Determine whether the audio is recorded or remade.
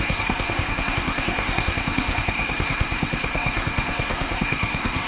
remade